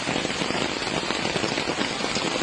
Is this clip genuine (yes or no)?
yes